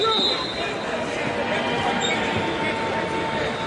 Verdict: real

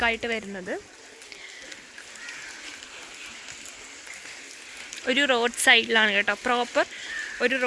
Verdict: real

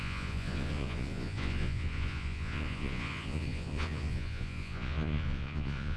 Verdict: fake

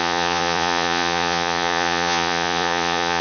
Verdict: fake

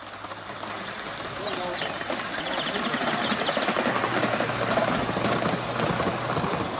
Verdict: real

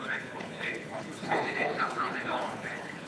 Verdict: fake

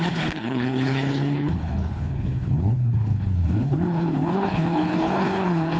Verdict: fake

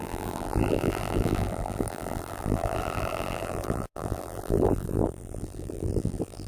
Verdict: fake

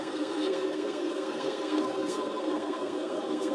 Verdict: fake